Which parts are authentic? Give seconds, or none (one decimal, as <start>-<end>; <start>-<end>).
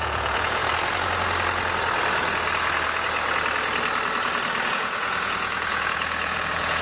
0.6-4.7